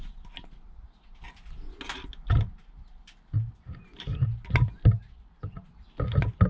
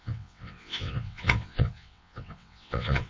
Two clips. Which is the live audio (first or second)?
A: first